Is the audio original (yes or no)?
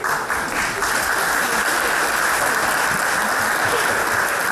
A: yes